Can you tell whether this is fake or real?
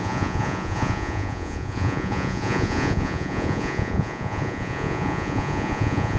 fake